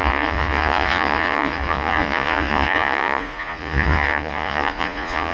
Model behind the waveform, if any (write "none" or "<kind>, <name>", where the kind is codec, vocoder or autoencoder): vocoder, Vocos